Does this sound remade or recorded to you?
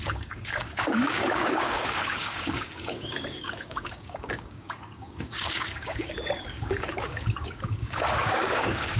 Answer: remade